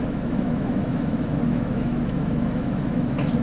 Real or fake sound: fake